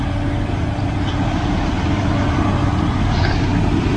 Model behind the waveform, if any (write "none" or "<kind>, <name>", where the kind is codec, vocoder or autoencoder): none